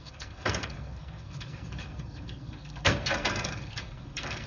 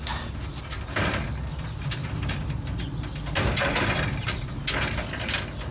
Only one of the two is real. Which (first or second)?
second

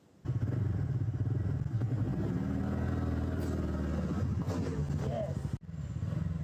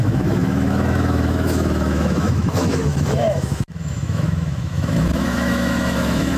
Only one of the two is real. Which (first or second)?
first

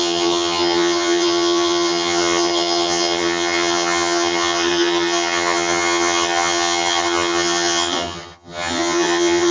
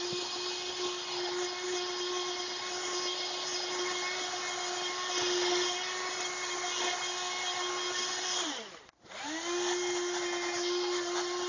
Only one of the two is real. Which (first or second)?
second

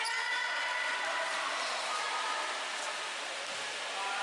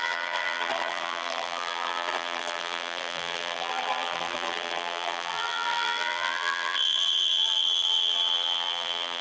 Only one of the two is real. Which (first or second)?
first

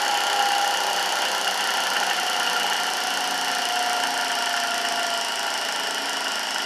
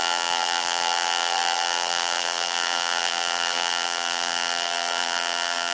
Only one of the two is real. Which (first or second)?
first